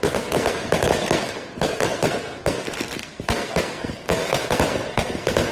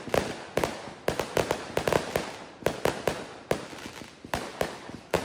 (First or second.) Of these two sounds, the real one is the second